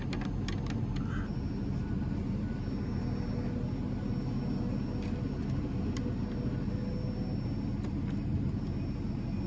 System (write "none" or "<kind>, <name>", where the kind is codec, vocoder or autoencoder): none